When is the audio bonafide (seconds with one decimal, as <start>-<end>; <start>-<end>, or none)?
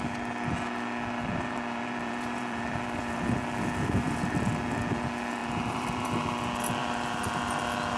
0.0-1.2; 4.4-5.4; 6.1-6.8; 7.3-8.0